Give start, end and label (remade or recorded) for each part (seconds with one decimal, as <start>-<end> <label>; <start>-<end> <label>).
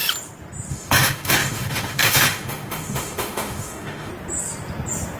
0.0-0.7 recorded; 0.7-4.1 remade; 4.1-5.2 recorded